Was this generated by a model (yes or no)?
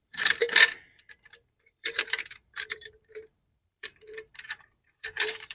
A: yes